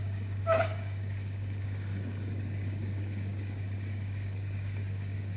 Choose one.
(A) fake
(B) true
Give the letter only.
A